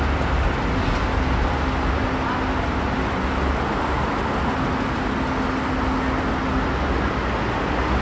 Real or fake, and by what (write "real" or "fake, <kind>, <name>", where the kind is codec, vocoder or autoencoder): real